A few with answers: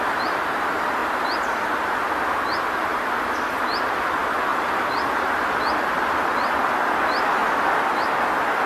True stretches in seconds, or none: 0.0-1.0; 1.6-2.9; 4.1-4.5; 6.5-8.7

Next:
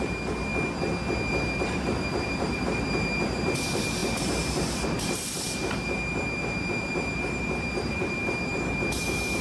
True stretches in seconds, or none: 0.5-1.3

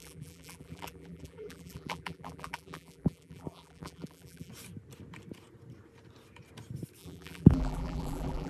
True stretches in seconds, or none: 4.5-7.0

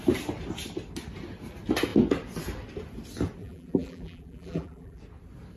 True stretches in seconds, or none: 0.0-3.4; 5.0-5.6

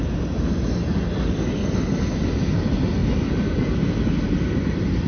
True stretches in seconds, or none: 0.0-5.1